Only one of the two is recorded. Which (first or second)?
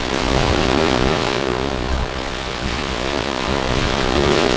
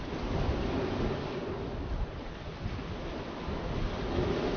second